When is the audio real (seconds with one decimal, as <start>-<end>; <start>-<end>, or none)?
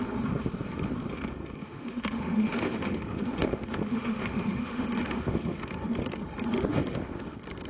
0.0-1.1; 5.7-6.7; 7.2-7.7